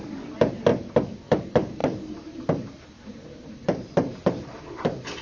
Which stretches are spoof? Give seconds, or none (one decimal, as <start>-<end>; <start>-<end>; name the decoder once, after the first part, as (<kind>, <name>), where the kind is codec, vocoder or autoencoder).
0.0-0.7 (vocoder, BigVGAN v2); 1.4-5.2